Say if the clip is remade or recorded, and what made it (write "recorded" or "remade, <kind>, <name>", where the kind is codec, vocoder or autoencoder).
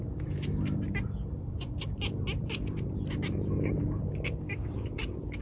remade, vocoder, BigVGAN v2